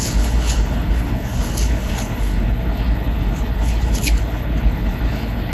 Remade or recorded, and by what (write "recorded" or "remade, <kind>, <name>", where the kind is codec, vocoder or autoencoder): remade, codec, HILCodec